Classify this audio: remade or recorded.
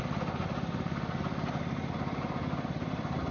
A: recorded